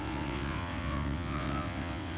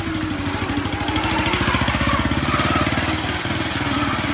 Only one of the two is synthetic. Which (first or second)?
first